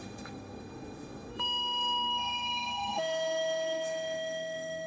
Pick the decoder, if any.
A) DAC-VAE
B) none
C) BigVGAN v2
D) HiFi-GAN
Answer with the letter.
A